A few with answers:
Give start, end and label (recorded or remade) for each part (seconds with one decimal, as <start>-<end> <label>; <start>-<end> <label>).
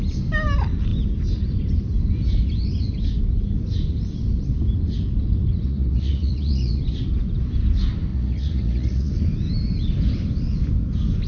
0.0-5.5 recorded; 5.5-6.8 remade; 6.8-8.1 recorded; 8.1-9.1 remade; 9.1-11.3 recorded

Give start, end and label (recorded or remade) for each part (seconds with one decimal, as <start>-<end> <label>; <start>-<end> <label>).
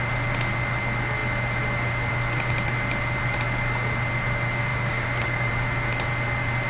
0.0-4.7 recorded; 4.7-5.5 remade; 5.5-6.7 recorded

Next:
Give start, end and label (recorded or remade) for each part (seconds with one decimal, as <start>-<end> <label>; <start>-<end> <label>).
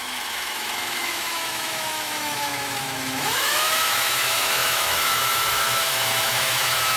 0.0-7.0 remade